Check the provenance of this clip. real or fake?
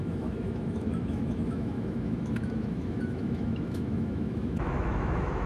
fake